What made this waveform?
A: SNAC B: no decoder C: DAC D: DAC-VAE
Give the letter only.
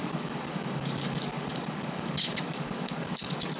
C